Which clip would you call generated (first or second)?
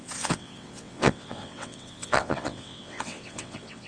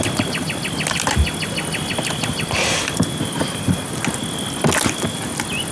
first